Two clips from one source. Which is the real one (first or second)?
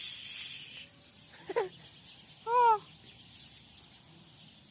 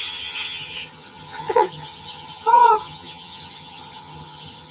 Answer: first